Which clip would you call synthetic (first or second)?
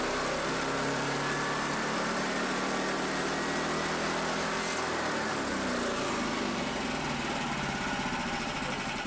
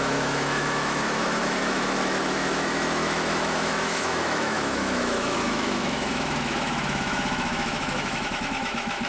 second